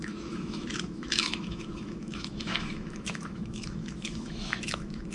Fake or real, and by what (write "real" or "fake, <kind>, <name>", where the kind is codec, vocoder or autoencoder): fake, autoencoder, DAC-VAE